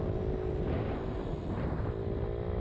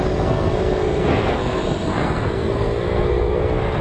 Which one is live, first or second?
first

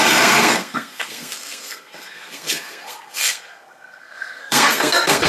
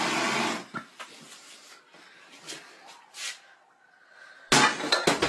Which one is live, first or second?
second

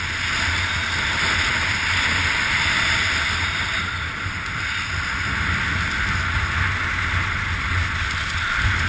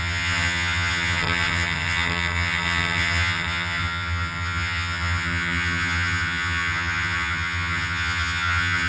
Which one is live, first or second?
first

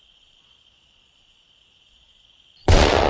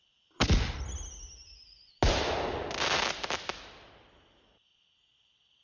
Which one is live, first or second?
second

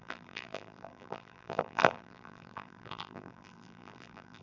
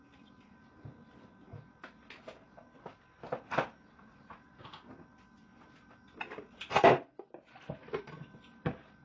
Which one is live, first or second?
second